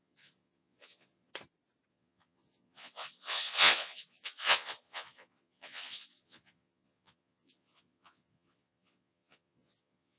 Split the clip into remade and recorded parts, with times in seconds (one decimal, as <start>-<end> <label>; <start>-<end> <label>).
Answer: 0.0-1.3 remade; 1.3-1.9 recorded; 1.9-10.2 remade